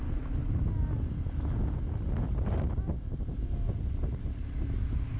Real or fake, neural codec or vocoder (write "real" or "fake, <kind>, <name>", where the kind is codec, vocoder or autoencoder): real